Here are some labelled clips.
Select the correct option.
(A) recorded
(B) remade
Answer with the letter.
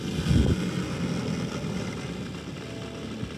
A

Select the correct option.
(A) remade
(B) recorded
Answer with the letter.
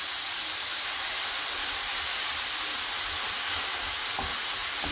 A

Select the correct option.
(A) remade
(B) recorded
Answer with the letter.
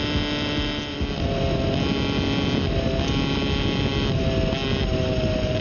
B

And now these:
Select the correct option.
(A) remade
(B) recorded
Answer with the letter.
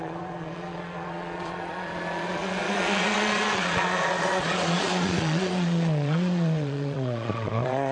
A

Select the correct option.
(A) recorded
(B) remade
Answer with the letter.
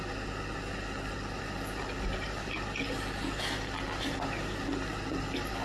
A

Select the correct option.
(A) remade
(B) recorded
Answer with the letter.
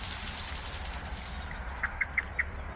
B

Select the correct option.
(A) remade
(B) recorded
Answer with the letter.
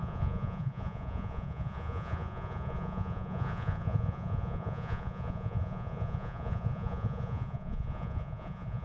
A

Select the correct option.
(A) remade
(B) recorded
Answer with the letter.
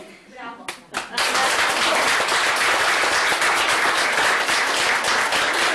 B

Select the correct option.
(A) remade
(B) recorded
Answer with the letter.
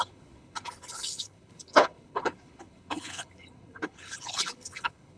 A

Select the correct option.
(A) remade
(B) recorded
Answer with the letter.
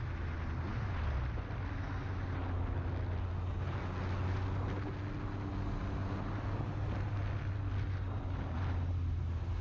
B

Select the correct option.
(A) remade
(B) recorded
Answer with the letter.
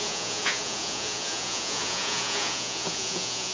A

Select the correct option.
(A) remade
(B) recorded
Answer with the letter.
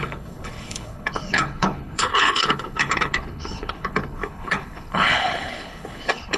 A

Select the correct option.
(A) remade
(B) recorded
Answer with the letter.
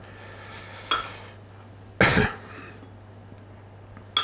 B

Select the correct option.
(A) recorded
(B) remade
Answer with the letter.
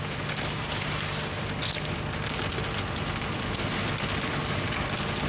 A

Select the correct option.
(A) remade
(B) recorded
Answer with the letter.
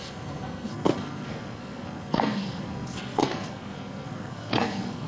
A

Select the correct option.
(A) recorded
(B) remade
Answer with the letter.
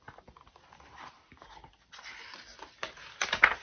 A